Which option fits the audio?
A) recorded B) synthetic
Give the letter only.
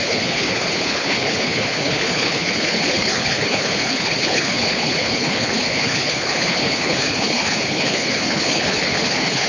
B